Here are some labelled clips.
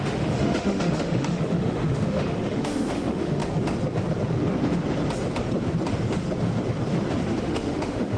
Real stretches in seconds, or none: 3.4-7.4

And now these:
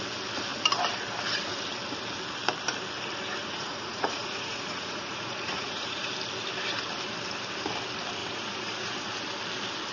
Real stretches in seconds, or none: 0.0-3.4; 6.1-8.2; 9.0-9.9

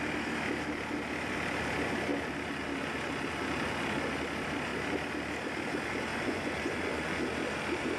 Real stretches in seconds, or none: 0.0-6.1; 7.2-8.0

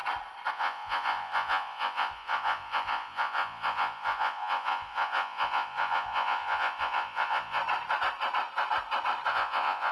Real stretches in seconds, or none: 0.0-0.5; 7.6-9.3

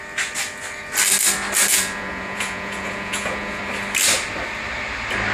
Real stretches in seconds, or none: 0.0-1.7; 3.6-5.3

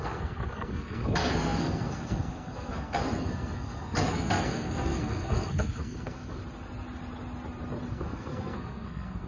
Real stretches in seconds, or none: 6.4-7.9

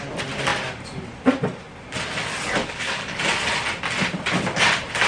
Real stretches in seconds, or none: 0.0-2.6; 3.2-5.1

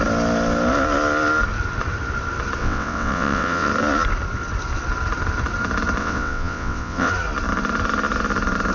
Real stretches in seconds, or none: 0.0-2.6; 3.7-6.0; 7.1-8.7